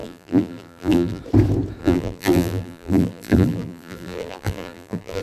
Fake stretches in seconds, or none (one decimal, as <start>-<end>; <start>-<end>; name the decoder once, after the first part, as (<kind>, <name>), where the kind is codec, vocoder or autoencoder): 0.0-1.2 (vocoder, BigVGAN v2); 1.8-5.2